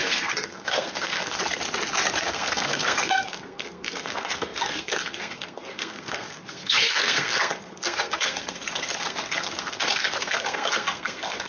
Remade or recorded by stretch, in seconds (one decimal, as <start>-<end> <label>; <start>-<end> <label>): 0.0-1.4 remade; 1.4-2.2 recorded; 2.2-11.5 remade

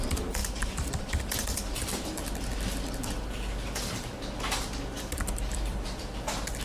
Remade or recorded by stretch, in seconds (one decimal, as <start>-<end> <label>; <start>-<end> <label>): 0.0-2.2 remade; 2.2-5.5 recorded; 5.5-6.6 remade

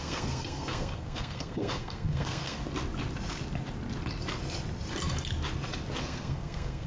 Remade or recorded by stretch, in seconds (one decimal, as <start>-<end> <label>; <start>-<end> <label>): 0.0-2.6 remade; 2.6-6.0 recorded; 6.0-6.9 remade

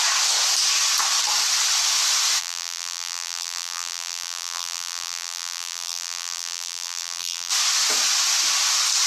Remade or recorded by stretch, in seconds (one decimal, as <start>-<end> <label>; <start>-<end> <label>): 0.0-2.4 recorded; 2.4-7.5 remade; 7.5-9.1 recorded

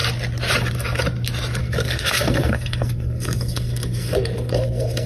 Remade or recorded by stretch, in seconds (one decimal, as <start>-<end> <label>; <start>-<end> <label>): 0.0-1.6 recorded; 1.6-5.1 remade

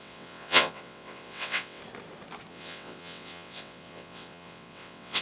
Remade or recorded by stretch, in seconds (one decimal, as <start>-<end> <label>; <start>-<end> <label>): 0.0-1.8 remade; 1.8-2.5 recorded; 2.5-5.2 remade

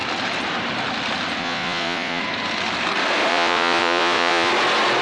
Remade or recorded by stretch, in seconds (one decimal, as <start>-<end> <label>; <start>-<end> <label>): 0.0-1.4 recorded; 1.4-2.2 remade; 2.2-3.3 recorded; 3.3-4.5 remade; 4.5-5.0 recorded